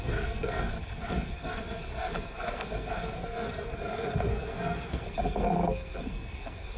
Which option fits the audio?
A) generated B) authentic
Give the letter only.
A